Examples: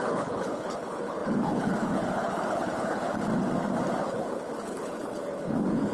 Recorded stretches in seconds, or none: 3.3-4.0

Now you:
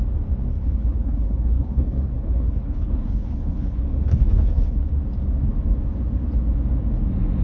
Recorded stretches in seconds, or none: 0.0-0.5; 4.9-7.4

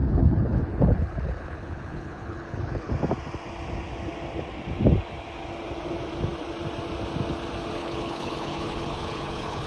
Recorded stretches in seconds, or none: 2.9-7.8

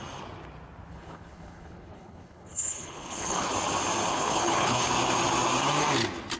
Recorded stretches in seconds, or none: 0.0-0.9; 3.5-4.1; 4.9-6.4